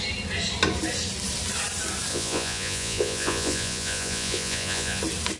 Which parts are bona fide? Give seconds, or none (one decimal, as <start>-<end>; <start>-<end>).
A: 0.0-2.1; 5.0-5.4